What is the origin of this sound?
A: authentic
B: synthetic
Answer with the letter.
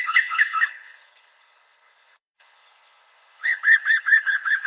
B